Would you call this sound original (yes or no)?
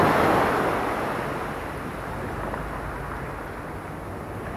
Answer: yes